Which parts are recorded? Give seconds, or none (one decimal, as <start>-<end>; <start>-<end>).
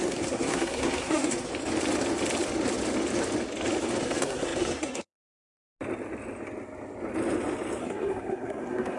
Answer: 1.5-4.0; 5.6-7.8